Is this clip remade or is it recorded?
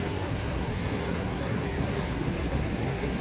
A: remade